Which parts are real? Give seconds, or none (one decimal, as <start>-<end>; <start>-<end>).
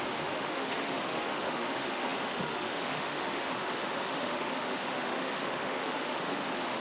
none